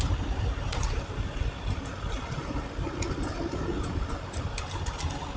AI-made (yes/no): no